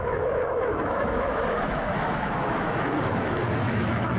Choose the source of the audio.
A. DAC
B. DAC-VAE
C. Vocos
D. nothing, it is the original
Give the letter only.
B